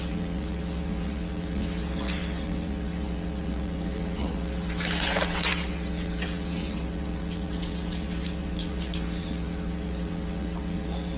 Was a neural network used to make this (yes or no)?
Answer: yes